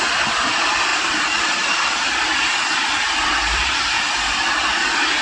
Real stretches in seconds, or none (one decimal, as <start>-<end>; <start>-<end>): 0.0-0.9; 4.0-5.2